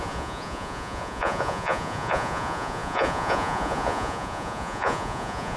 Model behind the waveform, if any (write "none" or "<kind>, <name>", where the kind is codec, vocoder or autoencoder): vocoder, Vocos